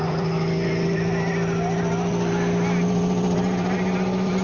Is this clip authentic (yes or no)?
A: no